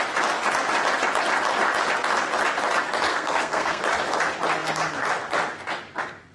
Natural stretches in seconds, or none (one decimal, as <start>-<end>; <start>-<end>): 0.0-3.1; 3.8-6.3